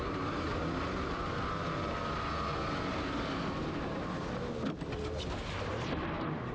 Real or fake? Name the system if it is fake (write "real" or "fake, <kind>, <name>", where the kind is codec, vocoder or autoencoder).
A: real